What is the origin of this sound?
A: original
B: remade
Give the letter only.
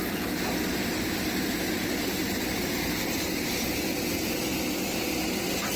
B